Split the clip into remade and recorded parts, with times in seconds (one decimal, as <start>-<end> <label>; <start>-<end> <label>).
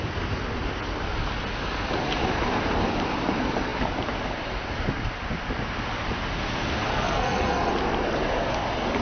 0.0-6.9 recorded; 6.9-7.7 remade; 7.7-9.0 recorded